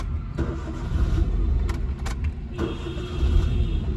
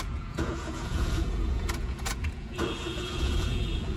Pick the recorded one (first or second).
first